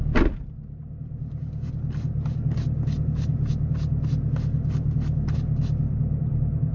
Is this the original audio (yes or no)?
yes